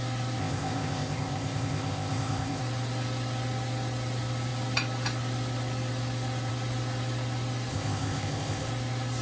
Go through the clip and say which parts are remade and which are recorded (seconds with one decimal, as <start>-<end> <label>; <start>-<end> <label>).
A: 0.0-0.4 recorded; 0.4-2.6 remade; 2.6-7.7 recorded; 7.7-8.7 remade; 8.7-9.2 recorded